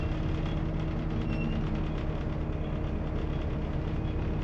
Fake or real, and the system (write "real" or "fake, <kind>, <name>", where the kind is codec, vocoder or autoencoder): real